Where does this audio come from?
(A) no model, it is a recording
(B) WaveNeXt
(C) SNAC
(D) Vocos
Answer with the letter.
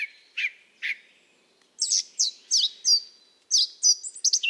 A